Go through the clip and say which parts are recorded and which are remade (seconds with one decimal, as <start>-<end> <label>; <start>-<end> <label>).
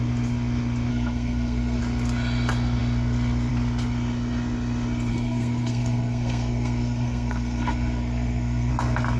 0.0-0.9 recorded; 0.9-1.8 remade; 1.8-5.1 recorded; 5.1-8.7 remade; 8.7-9.2 recorded